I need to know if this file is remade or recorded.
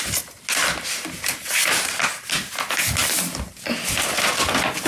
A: recorded